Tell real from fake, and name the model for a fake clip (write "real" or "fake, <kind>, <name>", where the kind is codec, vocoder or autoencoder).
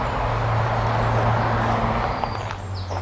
real